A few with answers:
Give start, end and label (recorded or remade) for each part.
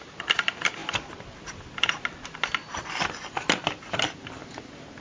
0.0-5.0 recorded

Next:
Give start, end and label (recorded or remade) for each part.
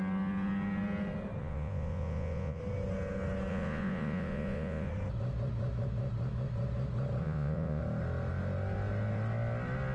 0.0-1.4 recorded; 1.4-2.6 remade; 2.6-3.5 recorded; 3.5-4.9 remade; 4.9-7.2 recorded; 7.2-7.8 remade; 7.8-9.9 recorded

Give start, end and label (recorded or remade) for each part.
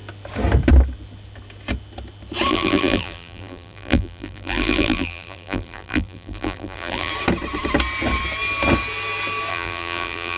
0.0-2.5 recorded; 2.5-7.1 remade; 7.1-9.5 recorded; 9.5-10.4 remade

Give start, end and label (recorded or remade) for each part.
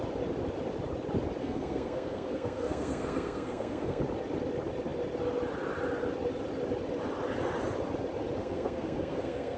0.0-1.4 recorded; 1.4-4.0 remade; 4.0-8.4 recorded; 8.4-9.6 remade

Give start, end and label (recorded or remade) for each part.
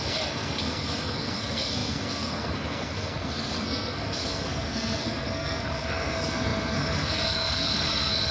0.0-8.3 remade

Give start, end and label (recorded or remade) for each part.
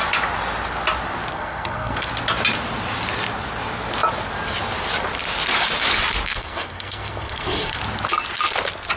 0.0-1.3 recorded; 1.3-2.1 remade; 2.1-6.3 recorded; 6.3-7.8 remade; 7.8-9.0 recorded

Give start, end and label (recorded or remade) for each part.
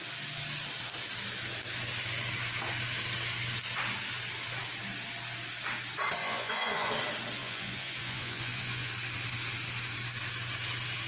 0.0-6.2 recorded; 6.2-6.9 remade; 6.9-7.4 recorded; 7.4-8.9 remade; 8.9-11.1 recorded